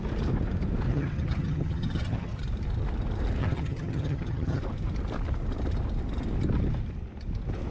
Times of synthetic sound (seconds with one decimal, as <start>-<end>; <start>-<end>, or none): 0.9-2.4; 3.4-4.6